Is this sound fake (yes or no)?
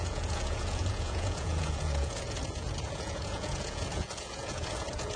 yes